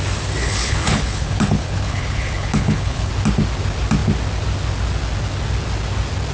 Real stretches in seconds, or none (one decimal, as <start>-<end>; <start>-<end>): 0.0-0.4; 3.1-6.3